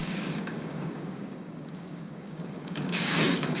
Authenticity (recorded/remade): remade